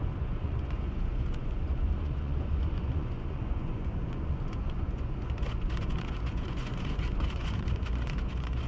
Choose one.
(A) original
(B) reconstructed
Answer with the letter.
B